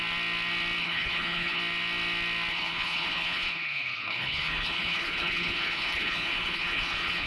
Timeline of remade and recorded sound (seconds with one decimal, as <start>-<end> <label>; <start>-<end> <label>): 0.0-0.8 recorded; 0.8-1.6 remade; 1.6-2.5 recorded; 2.5-7.3 remade